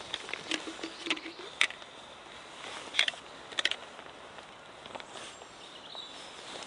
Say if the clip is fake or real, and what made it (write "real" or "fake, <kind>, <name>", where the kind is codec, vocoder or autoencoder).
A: real